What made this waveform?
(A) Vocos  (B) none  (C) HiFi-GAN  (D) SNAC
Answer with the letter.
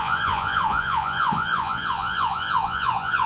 A